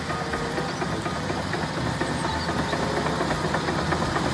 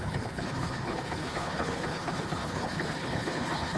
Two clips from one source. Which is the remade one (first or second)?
second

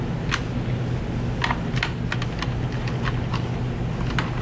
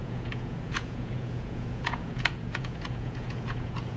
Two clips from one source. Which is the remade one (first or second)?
second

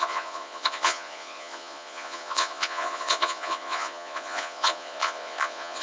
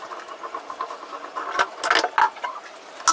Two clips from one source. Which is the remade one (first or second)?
first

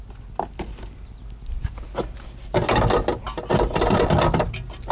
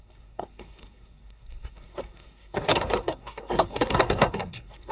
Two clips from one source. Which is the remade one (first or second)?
second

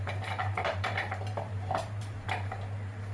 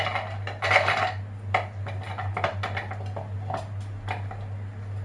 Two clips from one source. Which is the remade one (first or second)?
first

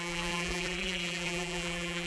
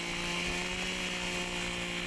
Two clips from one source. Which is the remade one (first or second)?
first